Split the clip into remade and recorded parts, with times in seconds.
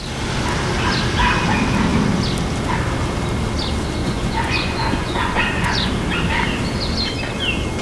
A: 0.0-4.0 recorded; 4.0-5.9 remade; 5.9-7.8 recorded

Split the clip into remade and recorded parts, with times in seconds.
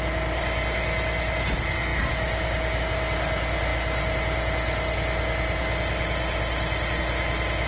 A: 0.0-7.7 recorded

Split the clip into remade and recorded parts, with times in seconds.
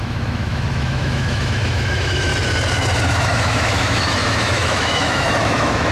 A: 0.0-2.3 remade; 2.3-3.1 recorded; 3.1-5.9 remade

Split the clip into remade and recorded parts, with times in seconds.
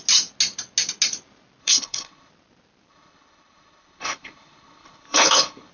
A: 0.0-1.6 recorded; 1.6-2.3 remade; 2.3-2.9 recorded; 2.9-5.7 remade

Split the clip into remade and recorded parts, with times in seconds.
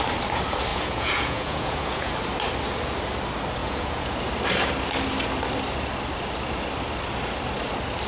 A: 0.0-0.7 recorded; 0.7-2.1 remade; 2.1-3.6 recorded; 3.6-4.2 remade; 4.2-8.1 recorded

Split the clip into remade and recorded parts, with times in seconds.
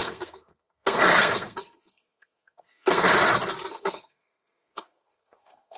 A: 0.0-3.1 remade; 3.1-3.7 recorded; 3.7-5.8 remade